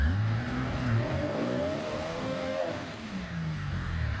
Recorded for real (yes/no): no